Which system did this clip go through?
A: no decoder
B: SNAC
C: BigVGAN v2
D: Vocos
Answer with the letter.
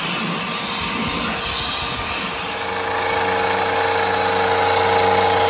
A